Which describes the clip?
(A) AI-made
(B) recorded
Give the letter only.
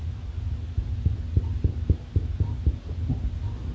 B